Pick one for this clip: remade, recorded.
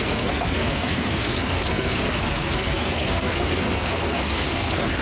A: remade